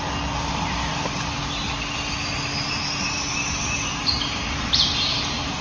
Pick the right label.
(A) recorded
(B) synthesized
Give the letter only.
A